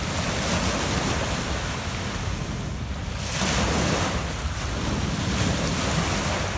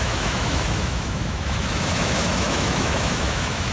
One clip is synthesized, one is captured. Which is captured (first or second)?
first